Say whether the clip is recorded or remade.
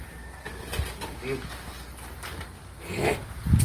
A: recorded